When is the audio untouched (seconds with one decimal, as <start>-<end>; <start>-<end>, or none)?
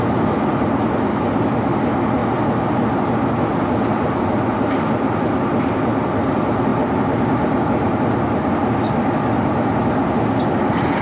0.0-11.0